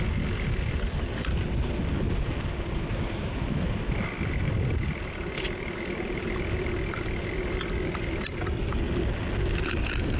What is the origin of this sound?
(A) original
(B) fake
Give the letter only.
A